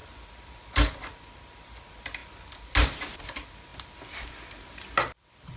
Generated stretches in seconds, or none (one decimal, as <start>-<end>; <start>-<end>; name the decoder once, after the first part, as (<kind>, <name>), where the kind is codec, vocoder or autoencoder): none